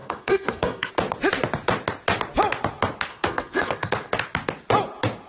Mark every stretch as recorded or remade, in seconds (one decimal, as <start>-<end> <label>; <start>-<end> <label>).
0.0-0.9 remade; 0.9-3.1 recorded; 3.1-3.9 remade; 3.9-5.3 recorded